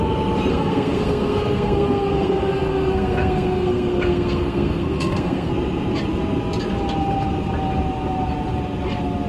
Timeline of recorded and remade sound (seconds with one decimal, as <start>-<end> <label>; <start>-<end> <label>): 0.0-0.5 recorded; 0.5-5.5 remade; 5.5-9.3 recorded